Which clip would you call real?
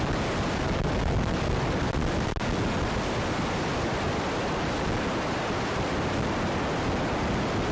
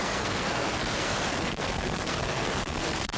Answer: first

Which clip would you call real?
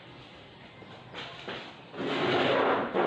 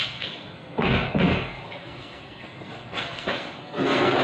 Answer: first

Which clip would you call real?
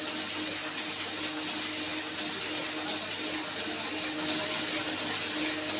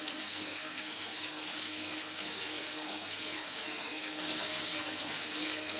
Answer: first